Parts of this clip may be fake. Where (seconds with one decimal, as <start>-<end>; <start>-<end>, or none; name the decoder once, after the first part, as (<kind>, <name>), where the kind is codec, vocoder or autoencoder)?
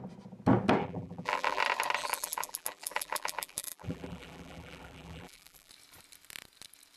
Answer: 0.8-1.6 (vocoder, BigVGAN v2); 2.0-5.7